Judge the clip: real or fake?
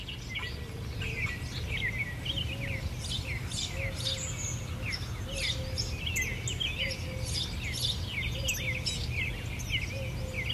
real